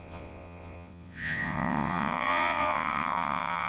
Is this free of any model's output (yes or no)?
no